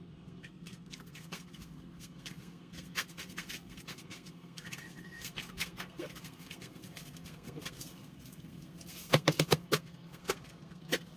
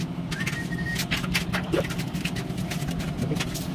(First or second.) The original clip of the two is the second